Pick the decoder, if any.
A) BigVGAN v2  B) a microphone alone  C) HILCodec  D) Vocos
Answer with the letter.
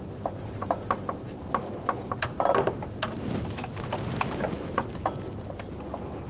B